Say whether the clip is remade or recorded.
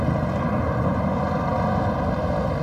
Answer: recorded